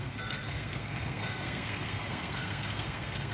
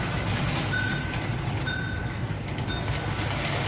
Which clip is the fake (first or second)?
first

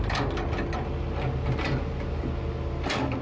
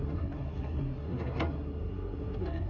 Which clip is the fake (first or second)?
second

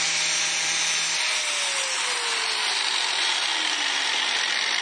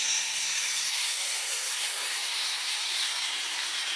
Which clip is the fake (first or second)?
second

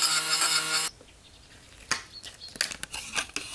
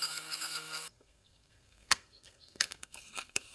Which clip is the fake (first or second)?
second